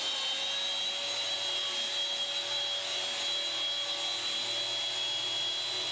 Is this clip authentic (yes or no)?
yes